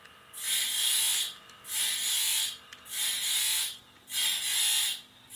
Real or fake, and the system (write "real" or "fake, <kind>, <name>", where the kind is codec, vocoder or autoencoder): fake, vocoder, BigVGAN v2